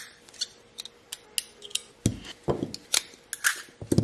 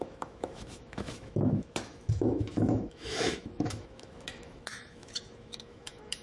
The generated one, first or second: second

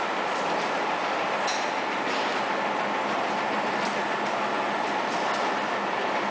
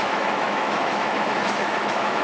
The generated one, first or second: second